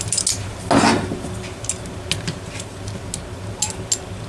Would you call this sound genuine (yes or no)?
yes